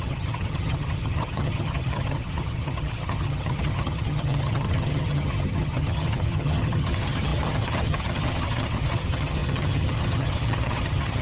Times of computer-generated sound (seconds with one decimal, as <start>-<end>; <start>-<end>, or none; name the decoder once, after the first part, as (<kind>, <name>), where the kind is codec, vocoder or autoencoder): 0.0-11.2 (vocoder, HiFi-GAN)